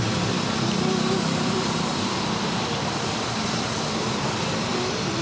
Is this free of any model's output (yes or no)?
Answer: no